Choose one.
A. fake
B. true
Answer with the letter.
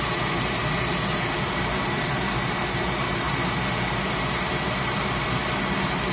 A